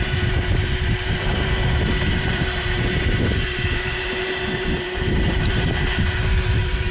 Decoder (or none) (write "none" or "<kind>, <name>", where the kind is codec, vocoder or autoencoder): vocoder, BigVGAN v2